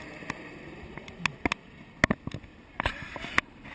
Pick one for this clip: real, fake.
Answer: real